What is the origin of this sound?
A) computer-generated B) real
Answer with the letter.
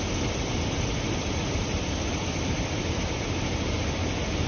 B